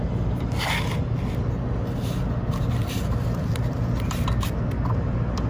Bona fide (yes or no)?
yes